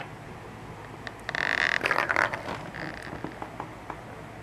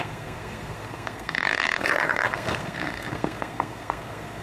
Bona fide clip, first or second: first